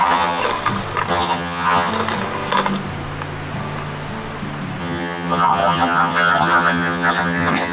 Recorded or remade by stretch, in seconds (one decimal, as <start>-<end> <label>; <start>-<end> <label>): 0.0-0.4 remade; 0.4-1.1 recorded; 1.1-1.9 remade; 1.9-4.8 recorded; 4.8-7.7 remade